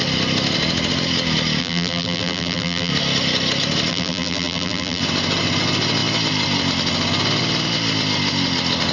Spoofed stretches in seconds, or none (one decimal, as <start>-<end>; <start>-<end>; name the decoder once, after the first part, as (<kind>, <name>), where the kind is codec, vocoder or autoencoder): 1.6-2.9 (vocoder, BigVGAN v2); 3.9-5.0